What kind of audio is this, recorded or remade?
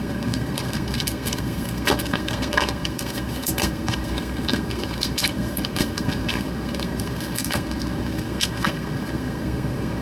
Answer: remade